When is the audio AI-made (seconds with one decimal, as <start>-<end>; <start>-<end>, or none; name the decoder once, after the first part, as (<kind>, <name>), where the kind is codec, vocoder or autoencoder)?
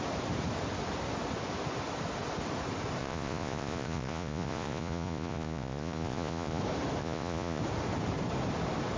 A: 3.0-6.6 (vocoder, Vocos); 7.0-7.6